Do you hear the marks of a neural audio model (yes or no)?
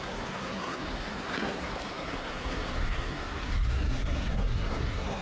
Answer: yes